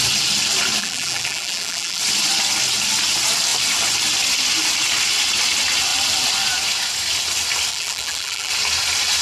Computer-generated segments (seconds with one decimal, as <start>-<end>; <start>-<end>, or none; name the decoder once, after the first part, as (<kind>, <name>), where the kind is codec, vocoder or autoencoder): 0.8-2.0 (vocoder, BigVGAN v2); 7.7-8.5